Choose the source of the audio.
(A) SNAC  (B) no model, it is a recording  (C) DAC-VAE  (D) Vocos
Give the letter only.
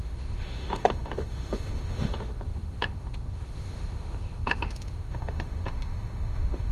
C